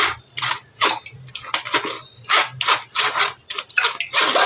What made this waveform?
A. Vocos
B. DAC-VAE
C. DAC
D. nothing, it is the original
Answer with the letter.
D